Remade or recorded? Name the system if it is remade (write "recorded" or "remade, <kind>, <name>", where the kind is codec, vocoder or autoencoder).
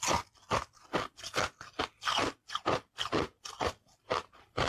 recorded